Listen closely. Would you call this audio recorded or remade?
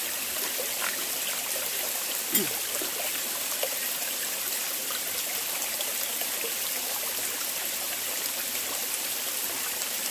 recorded